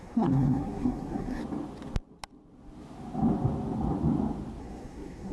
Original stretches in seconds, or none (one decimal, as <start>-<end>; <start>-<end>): 1.4-4.6